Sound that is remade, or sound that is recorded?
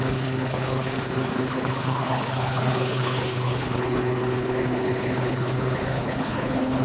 remade